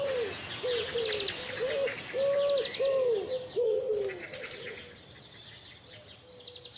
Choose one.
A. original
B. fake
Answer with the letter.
A